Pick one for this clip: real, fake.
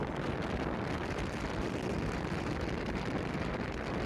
real